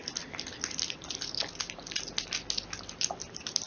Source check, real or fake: real